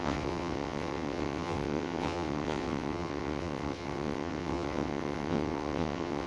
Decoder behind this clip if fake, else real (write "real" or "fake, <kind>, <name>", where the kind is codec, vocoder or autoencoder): fake, vocoder, WaveNeXt